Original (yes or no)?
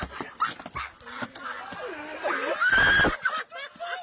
yes